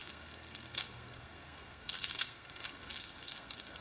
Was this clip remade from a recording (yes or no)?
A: yes